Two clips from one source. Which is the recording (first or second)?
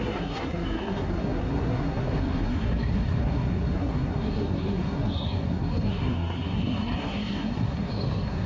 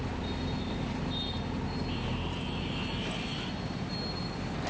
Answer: second